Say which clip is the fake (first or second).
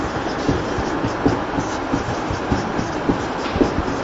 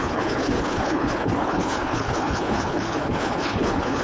second